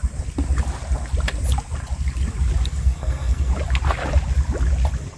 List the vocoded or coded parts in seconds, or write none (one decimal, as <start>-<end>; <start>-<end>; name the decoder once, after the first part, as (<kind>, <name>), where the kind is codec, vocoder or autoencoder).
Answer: 2.8-3.5 (codec, SNAC)